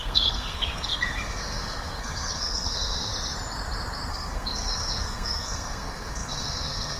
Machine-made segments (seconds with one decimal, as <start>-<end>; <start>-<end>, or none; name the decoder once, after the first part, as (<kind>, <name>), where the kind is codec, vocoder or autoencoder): 0.0-3.1 (codec, SNAC); 4.1-7.0